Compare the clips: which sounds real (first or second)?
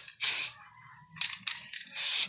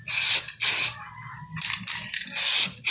second